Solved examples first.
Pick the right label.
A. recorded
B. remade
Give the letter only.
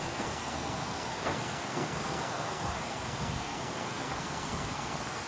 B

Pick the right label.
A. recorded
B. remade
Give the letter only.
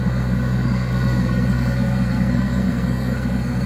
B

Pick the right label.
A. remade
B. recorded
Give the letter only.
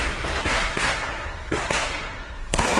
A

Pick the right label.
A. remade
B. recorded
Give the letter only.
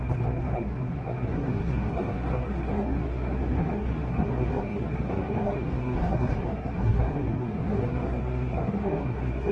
A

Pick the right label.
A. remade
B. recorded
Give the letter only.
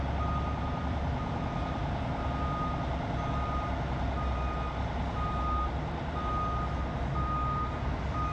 B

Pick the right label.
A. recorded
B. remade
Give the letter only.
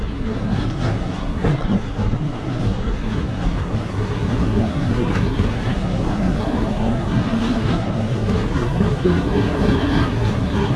B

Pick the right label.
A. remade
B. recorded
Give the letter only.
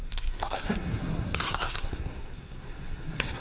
A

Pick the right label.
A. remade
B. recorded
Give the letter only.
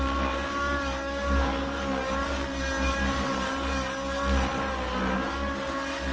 B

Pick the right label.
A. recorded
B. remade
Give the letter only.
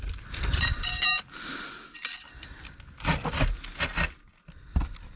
A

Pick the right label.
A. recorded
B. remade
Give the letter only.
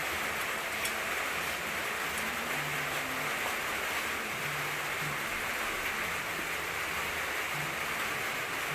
A